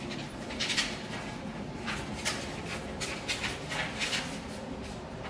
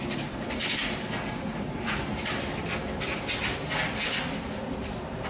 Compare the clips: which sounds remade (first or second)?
first